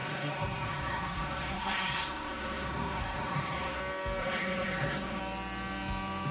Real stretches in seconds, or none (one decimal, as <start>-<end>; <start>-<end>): 3.8-4.2; 5.2-6.3